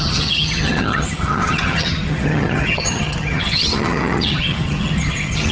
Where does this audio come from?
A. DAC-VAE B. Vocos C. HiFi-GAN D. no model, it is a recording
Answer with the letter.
C